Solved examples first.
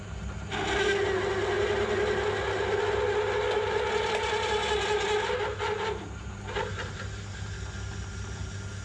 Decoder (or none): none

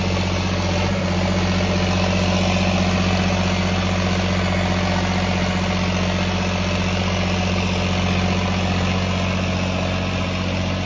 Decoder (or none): none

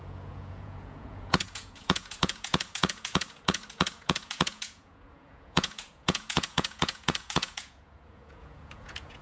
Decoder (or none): vocoder, Vocos